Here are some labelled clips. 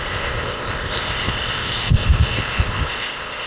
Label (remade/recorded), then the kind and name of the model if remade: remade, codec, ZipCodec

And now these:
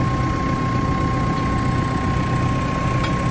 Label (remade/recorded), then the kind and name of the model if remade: recorded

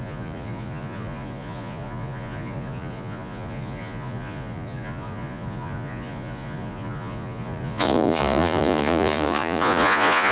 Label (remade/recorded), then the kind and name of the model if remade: remade, vocoder, Vocos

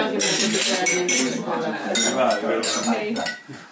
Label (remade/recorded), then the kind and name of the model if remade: recorded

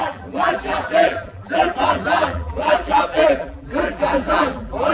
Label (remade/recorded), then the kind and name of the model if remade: remade, vocoder, BigVGAN v2